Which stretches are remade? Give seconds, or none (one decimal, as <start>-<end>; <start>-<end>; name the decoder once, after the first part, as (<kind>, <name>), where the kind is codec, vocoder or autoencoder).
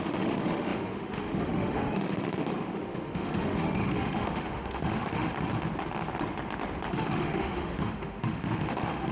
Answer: 0.0-5.3 (autoencoder, DAC-VAE); 6.9-9.1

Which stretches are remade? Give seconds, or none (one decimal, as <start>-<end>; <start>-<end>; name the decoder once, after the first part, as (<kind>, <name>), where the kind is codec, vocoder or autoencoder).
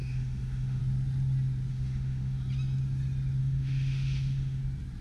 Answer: 0.0-0.8 (autoencoder, DAC-VAE); 1.7-2.4; 3.4-4.6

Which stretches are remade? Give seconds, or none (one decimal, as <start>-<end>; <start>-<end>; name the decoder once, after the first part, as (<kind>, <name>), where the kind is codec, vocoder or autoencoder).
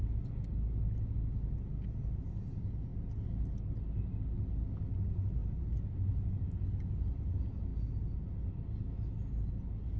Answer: none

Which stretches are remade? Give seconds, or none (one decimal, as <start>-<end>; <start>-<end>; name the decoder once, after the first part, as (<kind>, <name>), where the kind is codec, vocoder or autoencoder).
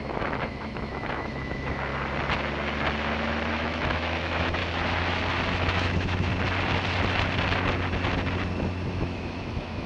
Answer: 0.0-1.9 (autoencoder, DAC-VAE); 3.5-4.6; 5.7-6.3; 8.9-9.9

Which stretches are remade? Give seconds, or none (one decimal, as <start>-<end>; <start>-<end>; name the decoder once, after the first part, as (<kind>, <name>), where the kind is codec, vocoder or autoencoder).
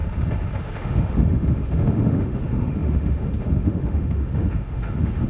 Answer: 0.6-5.3 (autoencoder, DAC-VAE)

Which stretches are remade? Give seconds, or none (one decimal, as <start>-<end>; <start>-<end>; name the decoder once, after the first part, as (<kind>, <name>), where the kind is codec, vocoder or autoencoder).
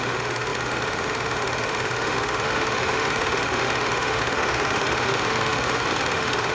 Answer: 0.0-6.5 (autoencoder, DAC-VAE)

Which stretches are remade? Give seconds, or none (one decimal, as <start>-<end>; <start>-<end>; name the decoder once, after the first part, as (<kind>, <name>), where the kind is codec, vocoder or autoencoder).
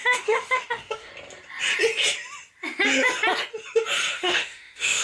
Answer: 0.0-1.1 (autoencoder, DAC-VAE); 4.1-5.0